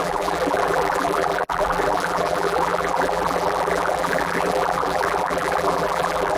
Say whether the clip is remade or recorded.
remade